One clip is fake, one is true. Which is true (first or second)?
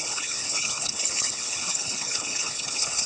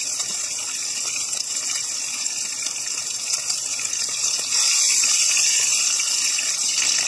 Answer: second